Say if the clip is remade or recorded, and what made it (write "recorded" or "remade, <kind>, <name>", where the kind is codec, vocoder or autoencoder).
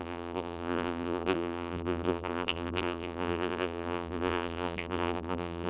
remade, vocoder, BigVGAN v2